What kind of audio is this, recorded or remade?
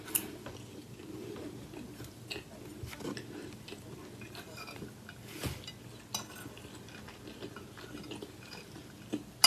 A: recorded